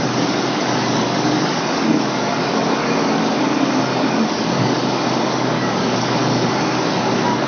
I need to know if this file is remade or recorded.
remade